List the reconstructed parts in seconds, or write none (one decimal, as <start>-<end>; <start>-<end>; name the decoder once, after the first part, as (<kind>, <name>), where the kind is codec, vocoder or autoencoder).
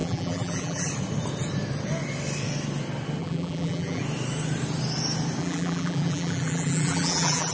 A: 0.0-0.9 (vocoder, BigVGAN v2); 3.2-4.0; 5.4-7.5